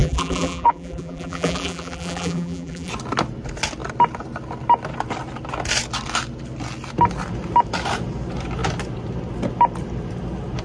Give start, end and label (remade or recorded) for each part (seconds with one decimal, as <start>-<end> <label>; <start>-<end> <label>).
0.0-2.9 remade; 2.9-10.6 recorded